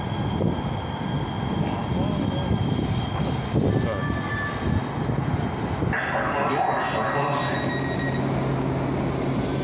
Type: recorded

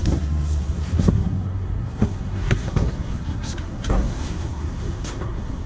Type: remade